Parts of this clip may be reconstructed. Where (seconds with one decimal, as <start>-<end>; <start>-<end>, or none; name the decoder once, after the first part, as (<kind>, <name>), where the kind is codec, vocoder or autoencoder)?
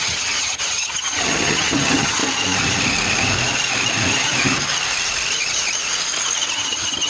0.0-2.2 (vocoder, HiFi-GAN); 6.5-7.1